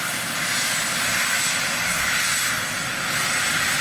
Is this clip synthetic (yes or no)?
no